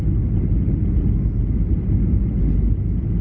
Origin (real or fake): real